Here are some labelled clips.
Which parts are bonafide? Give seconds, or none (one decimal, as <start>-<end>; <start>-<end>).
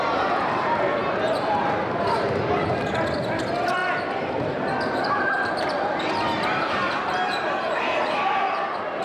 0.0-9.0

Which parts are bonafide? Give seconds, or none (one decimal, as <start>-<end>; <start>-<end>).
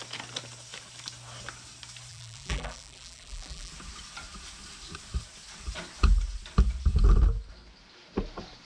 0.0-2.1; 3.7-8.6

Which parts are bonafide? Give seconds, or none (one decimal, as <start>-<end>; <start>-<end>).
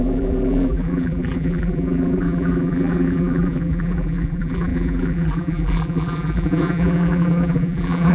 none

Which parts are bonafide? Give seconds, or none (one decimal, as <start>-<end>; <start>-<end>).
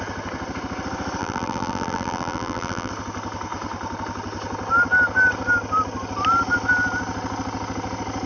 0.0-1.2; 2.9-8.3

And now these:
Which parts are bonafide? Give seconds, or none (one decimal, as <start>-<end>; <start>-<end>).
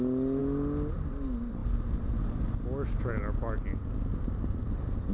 0.4-0.9; 1.6-4.4